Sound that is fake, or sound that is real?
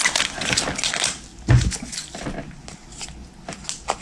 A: real